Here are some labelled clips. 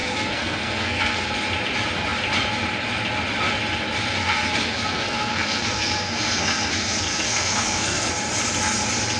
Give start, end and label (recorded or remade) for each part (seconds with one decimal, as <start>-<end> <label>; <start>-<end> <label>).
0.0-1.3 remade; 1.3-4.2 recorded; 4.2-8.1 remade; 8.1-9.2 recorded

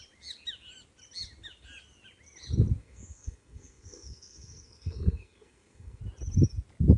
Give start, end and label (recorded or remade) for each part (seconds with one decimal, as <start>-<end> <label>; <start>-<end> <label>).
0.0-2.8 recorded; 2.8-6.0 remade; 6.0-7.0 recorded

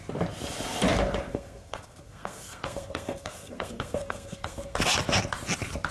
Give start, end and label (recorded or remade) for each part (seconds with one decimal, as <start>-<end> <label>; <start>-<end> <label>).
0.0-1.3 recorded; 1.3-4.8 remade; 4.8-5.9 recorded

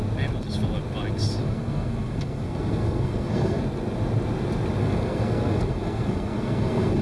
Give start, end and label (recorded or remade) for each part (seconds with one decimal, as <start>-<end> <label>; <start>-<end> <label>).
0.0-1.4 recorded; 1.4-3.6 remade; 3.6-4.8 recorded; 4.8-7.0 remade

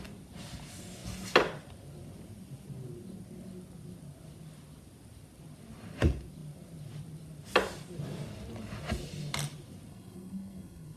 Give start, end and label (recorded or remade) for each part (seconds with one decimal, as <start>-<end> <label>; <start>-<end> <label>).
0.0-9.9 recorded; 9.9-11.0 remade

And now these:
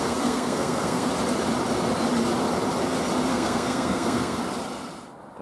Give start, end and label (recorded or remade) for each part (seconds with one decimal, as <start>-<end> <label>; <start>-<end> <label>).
0.0-1.1 remade; 1.1-3.3 recorded; 3.3-4.4 remade; 4.4-5.4 recorded